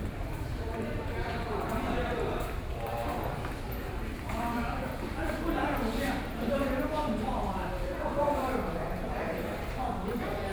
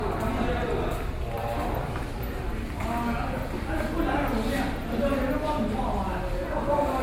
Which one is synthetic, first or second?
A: first